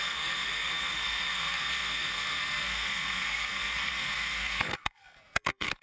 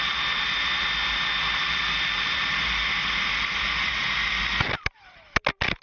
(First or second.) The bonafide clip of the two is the second